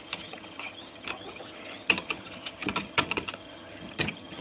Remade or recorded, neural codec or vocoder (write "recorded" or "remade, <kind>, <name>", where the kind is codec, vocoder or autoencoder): remade, vocoder, HiFi-GAN